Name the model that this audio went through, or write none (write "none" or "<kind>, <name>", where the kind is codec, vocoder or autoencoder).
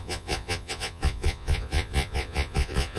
vocoder, Vocos